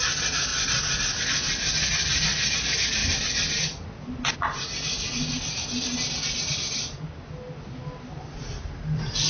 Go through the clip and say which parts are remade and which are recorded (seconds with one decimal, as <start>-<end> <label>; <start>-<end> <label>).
0.0-9.3 recorded